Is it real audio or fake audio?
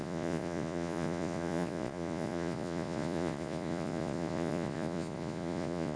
fake